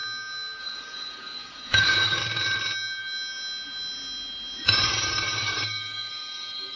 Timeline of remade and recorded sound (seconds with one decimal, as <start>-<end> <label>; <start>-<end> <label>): 0.0-0.6 recorded; 0.6-2.2 remade; 2.2-4.6 recorded; 4.6-6.8 remade